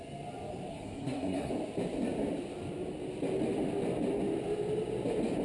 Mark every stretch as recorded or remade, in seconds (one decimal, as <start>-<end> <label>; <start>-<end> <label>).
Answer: 0.0-0.7 recorded; 0.7-1.5 remade; 1.5-5.4 recorded